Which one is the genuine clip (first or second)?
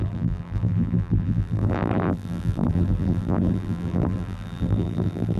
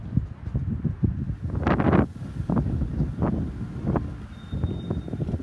second